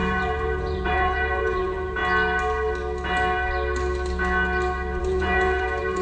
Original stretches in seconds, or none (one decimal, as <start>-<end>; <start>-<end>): 2.0-5.0